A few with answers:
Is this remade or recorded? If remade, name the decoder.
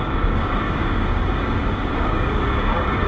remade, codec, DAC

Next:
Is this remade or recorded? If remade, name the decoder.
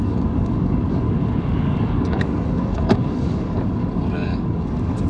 remade, codec, DAC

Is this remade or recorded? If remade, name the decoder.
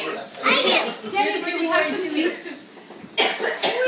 recorded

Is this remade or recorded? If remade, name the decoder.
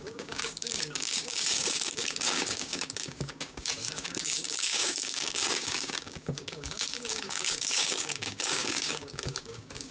remade, codec, DAC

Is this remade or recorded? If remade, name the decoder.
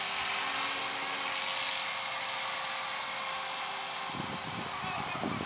recorded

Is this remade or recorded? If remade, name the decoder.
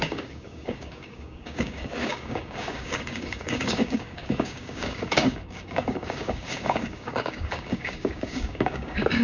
remade, codec, DAC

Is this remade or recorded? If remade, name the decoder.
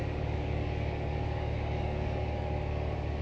remade, codec, DAC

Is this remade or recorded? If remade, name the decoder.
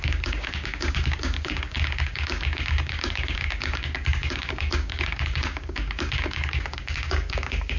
remade, codec, DAC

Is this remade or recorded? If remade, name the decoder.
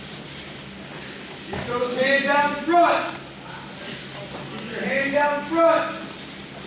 recorded